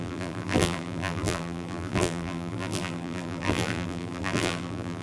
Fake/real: fake